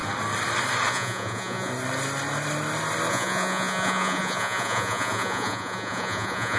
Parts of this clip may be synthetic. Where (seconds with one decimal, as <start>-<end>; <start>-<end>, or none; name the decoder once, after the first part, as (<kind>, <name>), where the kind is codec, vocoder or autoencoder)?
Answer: 0.9-1.7 (vocoder, Vocos); 3.1-6.6